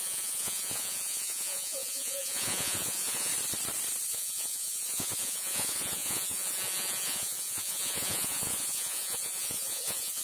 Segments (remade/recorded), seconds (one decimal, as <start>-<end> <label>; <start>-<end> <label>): 0.0-3.3 remade; 3.3-4.1 recorded; 4.1-10.2 remade